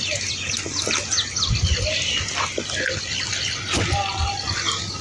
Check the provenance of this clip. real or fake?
real